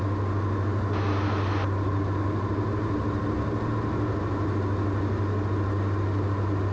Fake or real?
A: real